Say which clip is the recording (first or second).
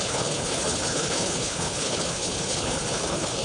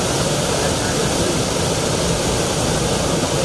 second